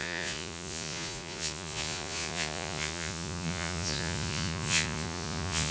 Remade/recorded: remade